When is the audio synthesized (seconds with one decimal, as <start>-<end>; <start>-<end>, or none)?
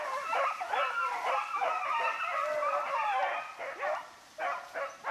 none